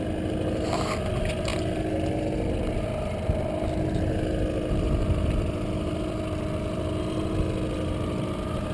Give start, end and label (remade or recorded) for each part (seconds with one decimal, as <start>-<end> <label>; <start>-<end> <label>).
0.0-8.7 recorded